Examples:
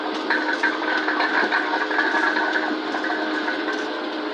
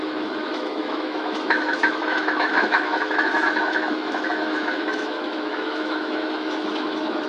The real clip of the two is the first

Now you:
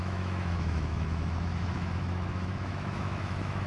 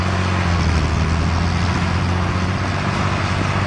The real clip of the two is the second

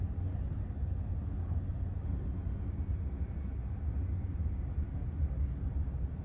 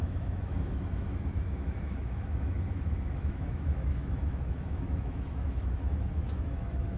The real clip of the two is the first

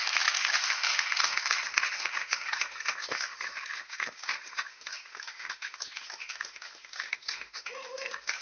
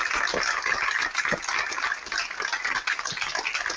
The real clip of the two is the second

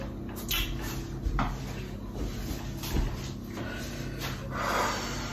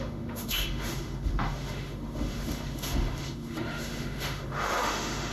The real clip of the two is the first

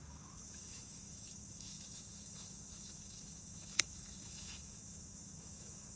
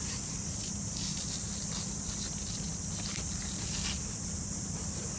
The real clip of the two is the second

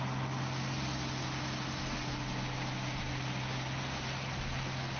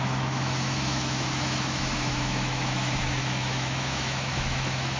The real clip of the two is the first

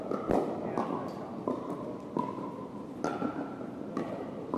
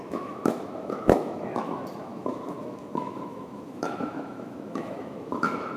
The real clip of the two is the first